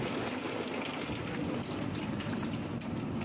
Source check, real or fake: real